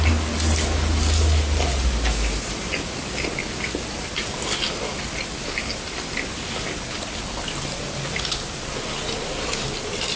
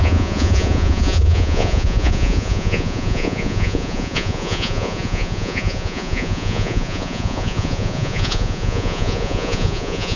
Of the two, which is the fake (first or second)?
second